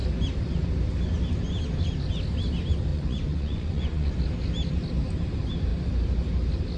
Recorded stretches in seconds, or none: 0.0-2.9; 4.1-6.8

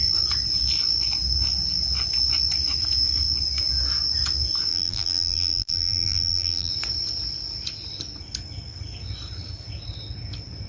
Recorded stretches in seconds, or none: 0.0-4.7; 6.7-10.7

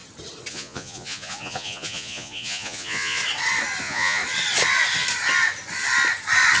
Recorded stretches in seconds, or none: 0.0-0.5; 3.2-3.8; 4.2-6.6